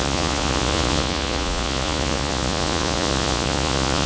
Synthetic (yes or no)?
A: yes